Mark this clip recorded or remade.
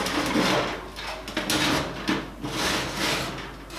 recorded